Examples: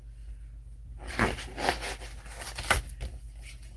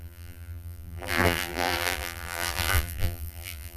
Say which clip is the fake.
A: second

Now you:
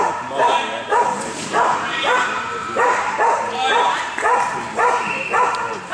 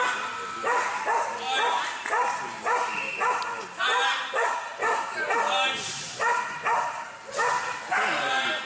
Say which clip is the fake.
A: first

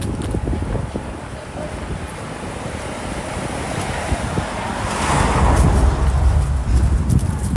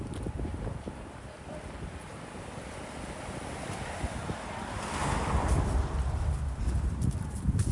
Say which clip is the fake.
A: second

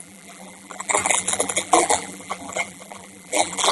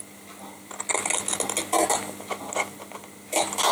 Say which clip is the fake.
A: first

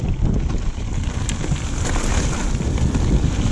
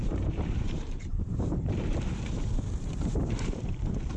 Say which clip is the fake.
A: second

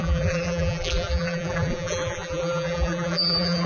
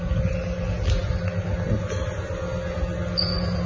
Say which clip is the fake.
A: first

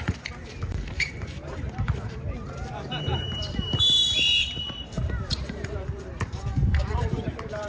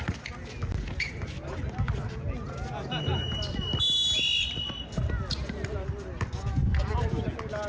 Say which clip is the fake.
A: first